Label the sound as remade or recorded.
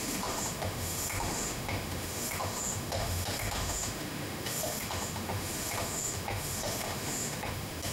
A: remade